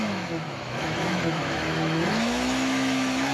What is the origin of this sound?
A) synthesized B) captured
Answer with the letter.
A